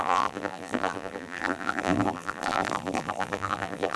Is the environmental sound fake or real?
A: fake